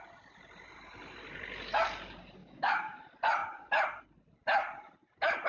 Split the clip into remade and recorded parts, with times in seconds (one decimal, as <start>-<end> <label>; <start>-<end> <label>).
0.0-2.4 recorded; 2.4-3.0 remade; 3.0-5.5 recorded